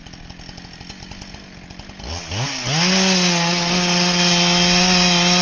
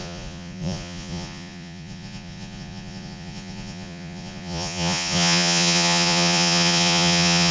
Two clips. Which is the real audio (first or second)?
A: first